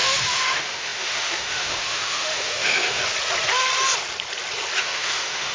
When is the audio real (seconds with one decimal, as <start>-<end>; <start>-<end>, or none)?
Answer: 3.0-4.8